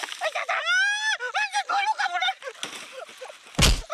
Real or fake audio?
real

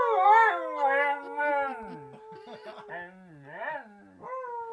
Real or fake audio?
real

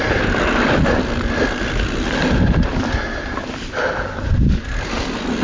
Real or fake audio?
real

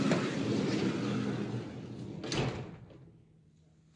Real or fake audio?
real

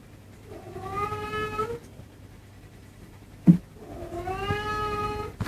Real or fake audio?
real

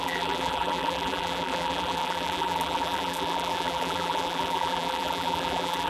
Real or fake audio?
fake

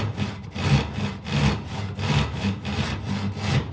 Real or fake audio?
real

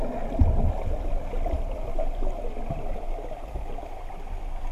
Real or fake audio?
real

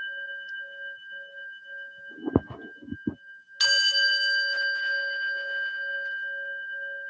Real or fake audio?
real